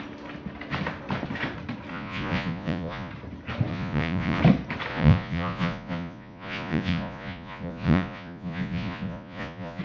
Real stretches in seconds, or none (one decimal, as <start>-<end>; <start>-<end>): 0.0-1.9; 3.1-3.7; 4.4-4.9